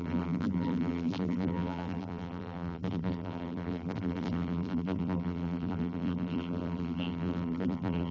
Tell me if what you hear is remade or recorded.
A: remade